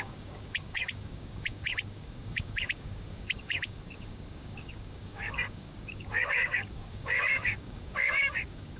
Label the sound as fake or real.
fake